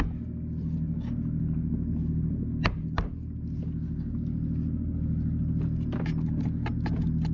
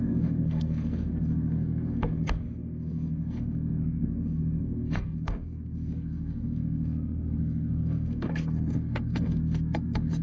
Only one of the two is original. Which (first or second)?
first